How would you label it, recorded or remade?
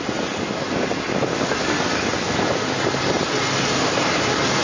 recorded